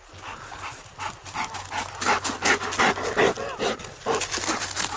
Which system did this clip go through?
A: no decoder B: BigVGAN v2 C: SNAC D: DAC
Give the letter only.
A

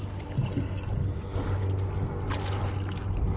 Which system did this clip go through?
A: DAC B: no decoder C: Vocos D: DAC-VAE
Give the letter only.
B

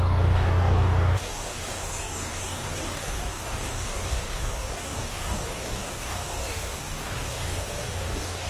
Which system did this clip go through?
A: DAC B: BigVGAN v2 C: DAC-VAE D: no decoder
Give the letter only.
A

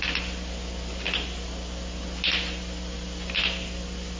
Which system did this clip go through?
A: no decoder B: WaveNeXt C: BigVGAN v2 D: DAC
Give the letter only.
A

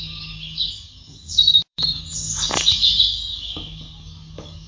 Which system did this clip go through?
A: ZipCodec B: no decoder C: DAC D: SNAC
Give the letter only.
C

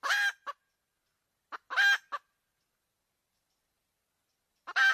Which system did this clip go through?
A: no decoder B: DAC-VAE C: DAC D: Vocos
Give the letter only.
A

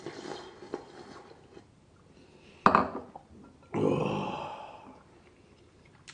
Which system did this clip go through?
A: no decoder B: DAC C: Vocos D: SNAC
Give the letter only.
A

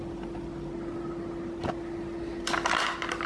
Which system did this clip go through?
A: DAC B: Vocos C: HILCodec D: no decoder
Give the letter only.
D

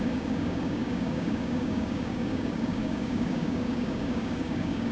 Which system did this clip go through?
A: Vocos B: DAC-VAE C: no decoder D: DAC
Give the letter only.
D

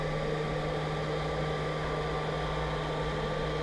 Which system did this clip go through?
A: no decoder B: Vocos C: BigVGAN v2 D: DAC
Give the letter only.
A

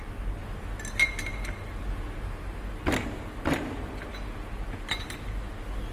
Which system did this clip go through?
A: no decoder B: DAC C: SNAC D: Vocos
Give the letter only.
A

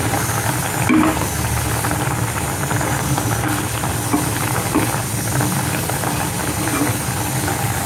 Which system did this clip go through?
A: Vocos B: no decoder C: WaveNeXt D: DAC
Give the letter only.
B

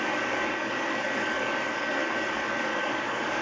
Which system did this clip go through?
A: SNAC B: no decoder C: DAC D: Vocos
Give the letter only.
C